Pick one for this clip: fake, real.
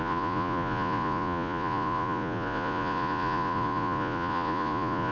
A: fake